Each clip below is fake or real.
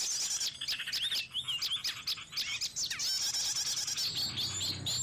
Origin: real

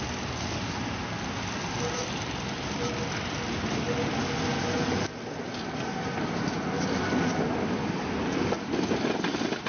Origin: real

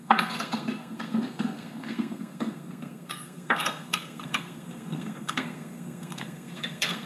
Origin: fake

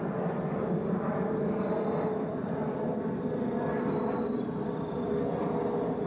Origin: real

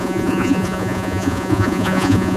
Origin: fake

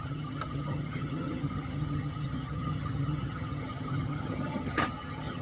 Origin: fake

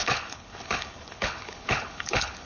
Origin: fake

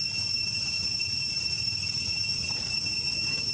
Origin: fake